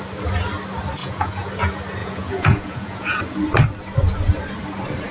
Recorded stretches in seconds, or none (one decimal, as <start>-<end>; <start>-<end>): 0.0-1.0; 1.5-2.0; 3.2-5.1